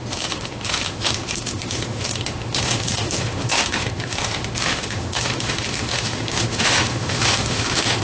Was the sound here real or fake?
fake